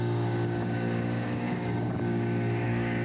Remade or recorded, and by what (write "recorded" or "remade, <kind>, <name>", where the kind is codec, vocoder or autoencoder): remade, codec, DAC